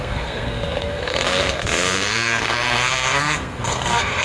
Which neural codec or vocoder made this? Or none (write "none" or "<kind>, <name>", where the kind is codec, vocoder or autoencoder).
codec, SNAC